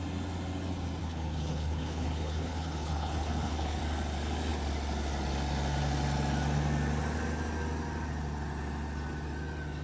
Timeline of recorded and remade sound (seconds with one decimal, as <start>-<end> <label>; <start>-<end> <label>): 0.0-1.0 recorded; 1.0-3.8 remade; 3.8-9.8 recorded

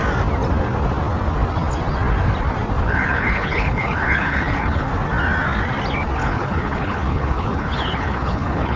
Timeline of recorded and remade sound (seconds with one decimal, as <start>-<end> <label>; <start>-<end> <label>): 0.0-2.8 recorded; 2.8-4.9 remade; 4.9-6.2 recorded; 6.2-8.8 remade

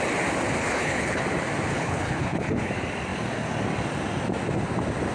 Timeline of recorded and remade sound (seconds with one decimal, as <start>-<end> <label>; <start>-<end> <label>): 0.0-0.6 recorded; 0.6-1.2 remade; 1.2-1.7 recorded; 1.7-2.7 remade; 2.7-5.1 recorded

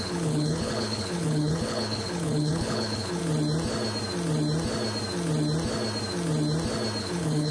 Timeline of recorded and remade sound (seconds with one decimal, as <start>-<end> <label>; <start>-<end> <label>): 0.0-3.2 remade; 3.2-7.0 recorded; 7.0-7.5 remade